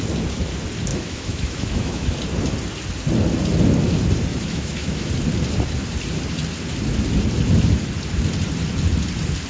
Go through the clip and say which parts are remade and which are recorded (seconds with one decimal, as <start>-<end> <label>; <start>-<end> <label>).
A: 0.0-0.9 recorded; 0.9-2.1 remade; 2.1-4.3 recorded; 4.3-5.1 remade; 5.1-9.5 recorded